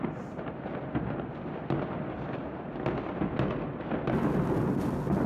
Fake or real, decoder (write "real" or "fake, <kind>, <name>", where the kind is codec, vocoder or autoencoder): real